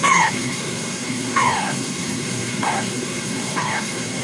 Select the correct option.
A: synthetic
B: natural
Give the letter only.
A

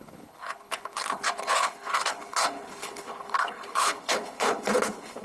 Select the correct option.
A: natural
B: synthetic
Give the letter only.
B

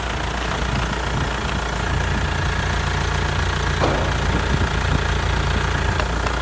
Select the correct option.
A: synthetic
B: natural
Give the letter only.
B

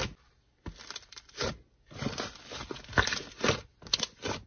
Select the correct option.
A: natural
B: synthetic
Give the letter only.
A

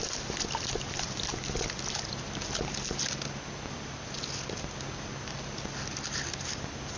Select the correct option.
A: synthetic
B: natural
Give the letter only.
B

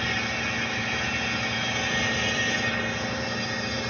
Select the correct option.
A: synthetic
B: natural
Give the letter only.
B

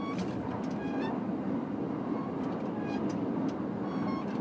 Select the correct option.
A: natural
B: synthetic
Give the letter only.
A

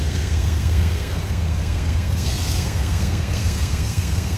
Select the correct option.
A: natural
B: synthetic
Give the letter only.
B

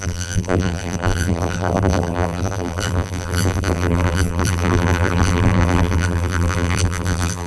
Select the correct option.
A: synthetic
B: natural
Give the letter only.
A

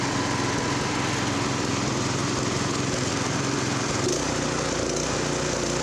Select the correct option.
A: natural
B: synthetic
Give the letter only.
A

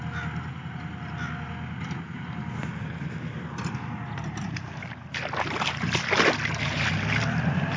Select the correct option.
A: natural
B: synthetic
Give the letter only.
A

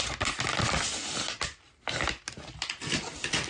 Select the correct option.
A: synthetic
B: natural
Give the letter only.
B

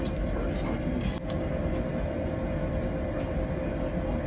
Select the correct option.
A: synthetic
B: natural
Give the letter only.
B